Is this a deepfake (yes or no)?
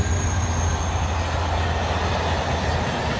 no